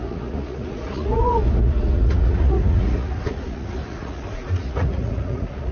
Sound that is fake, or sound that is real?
fake